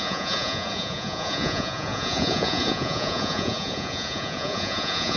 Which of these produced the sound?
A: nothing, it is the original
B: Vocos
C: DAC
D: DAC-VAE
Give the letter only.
B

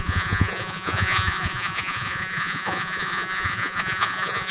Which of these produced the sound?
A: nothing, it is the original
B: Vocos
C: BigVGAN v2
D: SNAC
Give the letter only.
B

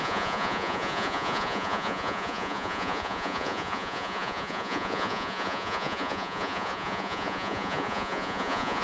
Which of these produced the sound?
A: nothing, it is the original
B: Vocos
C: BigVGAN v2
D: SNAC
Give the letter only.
B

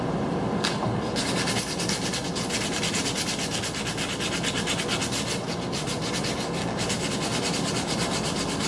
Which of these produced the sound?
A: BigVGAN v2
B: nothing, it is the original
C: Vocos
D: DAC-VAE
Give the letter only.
B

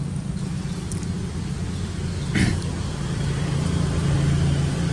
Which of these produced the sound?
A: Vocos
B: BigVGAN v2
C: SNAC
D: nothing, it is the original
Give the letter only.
D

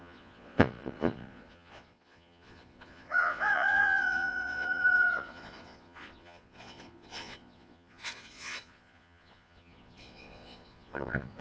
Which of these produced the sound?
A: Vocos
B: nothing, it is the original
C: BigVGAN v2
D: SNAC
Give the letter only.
A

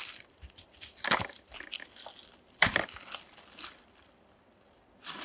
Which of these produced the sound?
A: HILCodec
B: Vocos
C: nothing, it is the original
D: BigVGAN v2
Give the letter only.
C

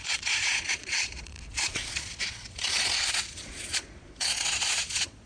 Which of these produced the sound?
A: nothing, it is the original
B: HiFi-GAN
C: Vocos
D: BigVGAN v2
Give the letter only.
C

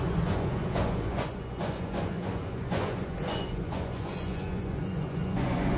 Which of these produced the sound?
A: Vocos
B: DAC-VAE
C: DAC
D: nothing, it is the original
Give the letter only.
A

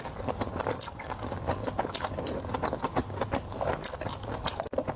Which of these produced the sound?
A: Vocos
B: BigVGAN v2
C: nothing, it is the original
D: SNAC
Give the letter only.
C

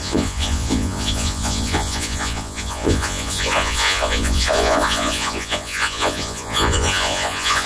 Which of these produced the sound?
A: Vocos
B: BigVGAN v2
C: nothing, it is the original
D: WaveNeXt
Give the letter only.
A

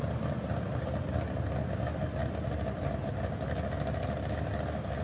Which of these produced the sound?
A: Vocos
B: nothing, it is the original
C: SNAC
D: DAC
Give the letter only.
B